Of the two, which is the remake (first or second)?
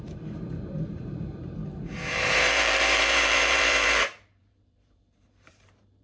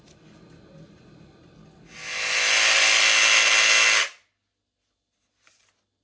first